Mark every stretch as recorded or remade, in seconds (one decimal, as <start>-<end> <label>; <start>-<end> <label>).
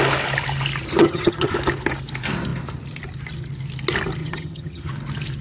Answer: 0.0-1.0 recorded; 1.0-1.5 remade; 1.5-4.2 recorded; 4.2-4.9 remade; 4.9-5.4 recorded